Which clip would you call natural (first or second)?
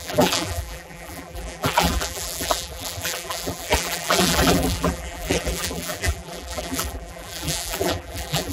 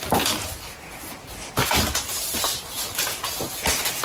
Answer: second